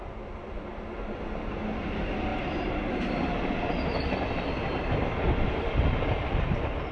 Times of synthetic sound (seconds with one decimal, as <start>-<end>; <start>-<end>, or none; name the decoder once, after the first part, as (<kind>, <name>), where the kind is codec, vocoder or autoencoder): none